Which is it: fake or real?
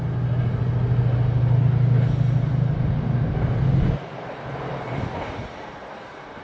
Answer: real